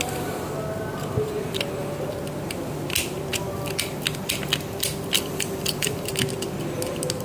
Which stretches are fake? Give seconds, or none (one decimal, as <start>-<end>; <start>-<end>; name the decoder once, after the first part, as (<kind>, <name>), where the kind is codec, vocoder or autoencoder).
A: 3.3-6.1 (vocoder, BigVGAN v2)